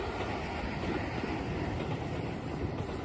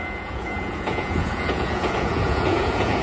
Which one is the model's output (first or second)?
second